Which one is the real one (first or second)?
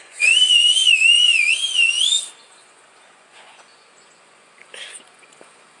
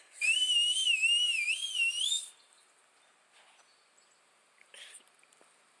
second